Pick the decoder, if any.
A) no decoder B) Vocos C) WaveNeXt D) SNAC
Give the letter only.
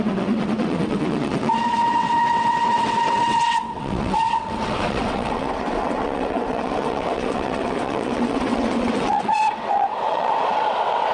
C